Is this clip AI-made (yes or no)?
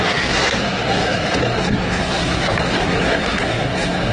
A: yes